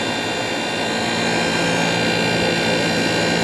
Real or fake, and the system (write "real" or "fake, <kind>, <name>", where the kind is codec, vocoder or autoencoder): real